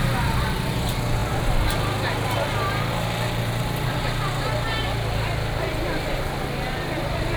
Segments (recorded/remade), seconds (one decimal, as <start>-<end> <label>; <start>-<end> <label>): 0.0-7.4 recorded